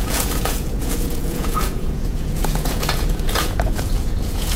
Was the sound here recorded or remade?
remade